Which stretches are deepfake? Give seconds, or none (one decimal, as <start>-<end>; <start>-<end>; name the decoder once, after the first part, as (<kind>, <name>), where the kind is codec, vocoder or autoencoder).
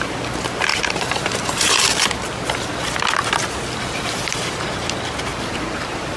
0.7-1.7 (vocoder, BigVGAN v2); 5.3-6.2